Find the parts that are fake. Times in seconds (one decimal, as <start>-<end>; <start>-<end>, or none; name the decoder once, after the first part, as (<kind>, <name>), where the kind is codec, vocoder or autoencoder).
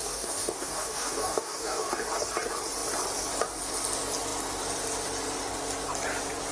0.0-1.9 (codec, DAC)